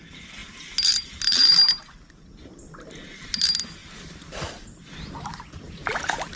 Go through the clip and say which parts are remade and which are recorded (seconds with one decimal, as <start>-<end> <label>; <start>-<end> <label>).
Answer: 0.0-6.4 recorded

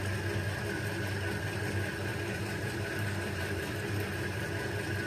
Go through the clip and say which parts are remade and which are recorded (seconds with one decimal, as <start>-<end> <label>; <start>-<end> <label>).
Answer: 0.0-2.1 recorded; 2.1-4.4 remade; 4.4-5.1 recorded